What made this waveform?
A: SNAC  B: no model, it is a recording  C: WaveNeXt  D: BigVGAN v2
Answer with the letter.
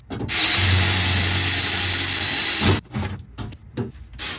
B